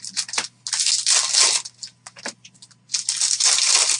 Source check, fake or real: real